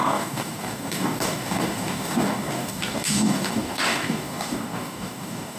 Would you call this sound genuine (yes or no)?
no